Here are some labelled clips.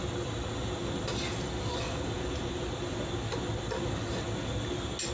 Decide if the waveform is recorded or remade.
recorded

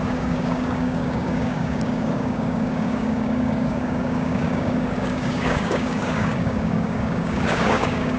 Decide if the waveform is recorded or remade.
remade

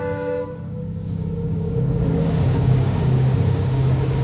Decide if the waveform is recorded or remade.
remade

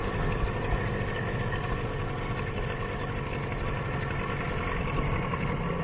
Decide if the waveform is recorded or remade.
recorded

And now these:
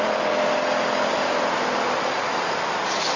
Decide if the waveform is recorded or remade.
recorded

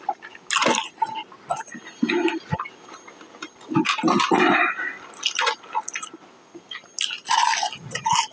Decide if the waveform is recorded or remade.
recorded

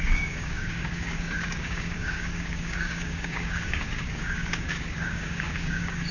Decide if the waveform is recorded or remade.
remade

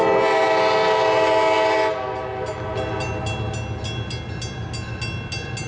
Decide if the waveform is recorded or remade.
recorded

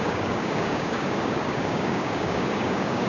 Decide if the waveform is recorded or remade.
remade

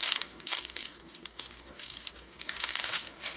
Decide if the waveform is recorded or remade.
remade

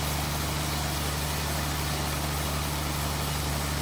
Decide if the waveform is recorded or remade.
recorded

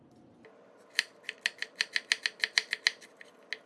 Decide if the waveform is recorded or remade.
recorded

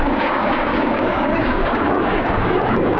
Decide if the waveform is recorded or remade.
remade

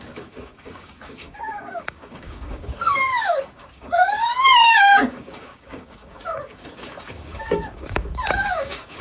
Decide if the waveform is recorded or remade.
remade